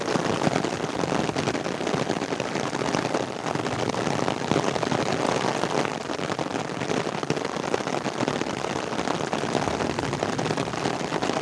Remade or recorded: recorded